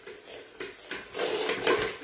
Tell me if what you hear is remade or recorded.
recorded